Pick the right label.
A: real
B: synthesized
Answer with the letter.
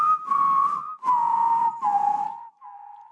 A